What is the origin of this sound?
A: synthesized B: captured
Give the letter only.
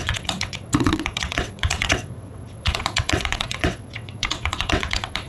A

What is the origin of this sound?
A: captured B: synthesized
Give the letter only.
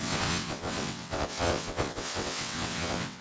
B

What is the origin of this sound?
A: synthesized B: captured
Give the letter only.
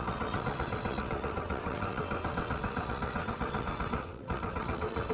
A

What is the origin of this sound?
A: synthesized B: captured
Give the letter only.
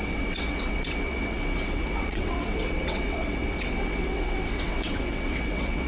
A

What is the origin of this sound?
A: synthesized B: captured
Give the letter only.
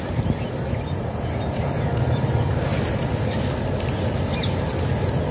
B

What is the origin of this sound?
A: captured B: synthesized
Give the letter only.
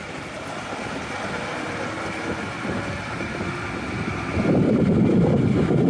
A